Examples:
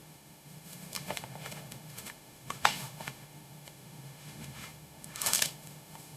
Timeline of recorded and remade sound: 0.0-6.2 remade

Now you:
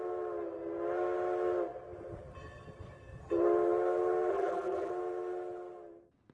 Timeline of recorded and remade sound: 0.0-4.3 recorded; 4.3-4.9 remade; 4.9-6.3 recorded